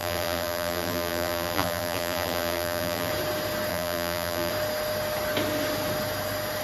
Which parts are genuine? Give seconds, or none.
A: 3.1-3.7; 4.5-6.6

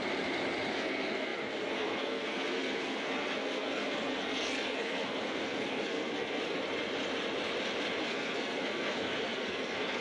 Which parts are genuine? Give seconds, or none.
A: 0.0-0.7; 6.6-8.0

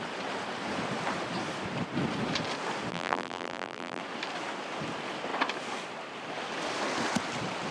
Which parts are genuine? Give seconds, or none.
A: 0.0-2.9; 4.0-7.7

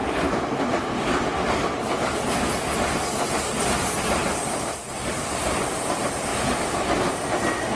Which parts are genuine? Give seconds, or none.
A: 0.0-7.8